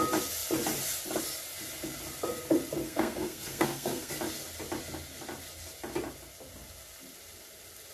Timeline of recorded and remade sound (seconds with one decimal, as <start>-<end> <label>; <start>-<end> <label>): 0.0-2.8 recorded; 2.8-4.1 remade; 4.1-7.9 recorded